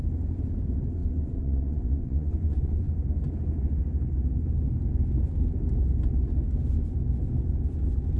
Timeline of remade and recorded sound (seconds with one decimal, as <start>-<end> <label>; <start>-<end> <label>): 0.0-1.0 recorded; 1.0-2.9 remade; 2.9-8.2 recorded

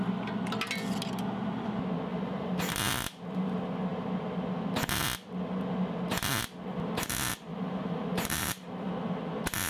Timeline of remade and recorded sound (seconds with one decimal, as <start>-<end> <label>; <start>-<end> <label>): 0.0-2.1 recorded; 2.1-2.6 remade; 2.6-7.5 recorded; 7.5-8.9 remade; 8.9-9.7 recorded

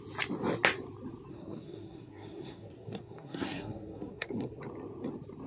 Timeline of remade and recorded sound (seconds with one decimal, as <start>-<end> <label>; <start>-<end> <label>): 0.0-1.3 recorded; 1.3-4.6 remade; 4.6-5.5 recorded

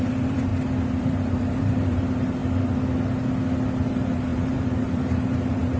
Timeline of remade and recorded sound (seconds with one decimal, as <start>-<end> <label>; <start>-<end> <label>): 0.0-0.5 remade; 0.5-1.0 recorded; 1.0-2.4 remade; 2.4-3.9 recorded; 3.9-5.8 remade

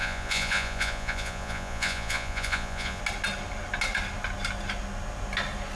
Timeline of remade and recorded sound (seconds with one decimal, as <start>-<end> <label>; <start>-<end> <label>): 0.0-3.0 remade; 3.0-5.8 recorded